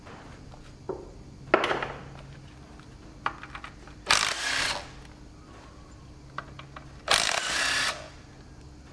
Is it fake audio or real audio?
real